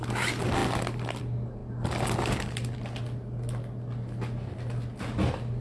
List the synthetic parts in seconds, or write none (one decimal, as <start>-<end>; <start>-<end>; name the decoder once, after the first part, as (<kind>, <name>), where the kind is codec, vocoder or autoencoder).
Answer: none